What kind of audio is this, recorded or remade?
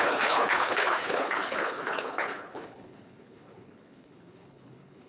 remade